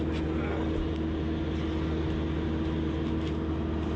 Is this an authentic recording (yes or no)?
yes